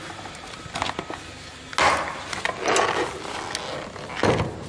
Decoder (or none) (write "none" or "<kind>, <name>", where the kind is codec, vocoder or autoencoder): none